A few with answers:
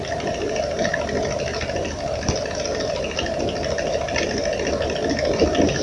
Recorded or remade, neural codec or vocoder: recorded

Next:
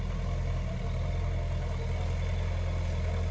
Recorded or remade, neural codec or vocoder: recorded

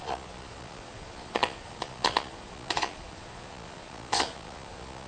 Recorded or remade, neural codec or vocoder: remade, vocoder, Vocos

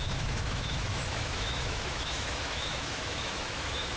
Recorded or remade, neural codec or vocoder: remade, autoencoder, DAC-VAE